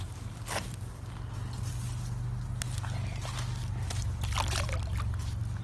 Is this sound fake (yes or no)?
no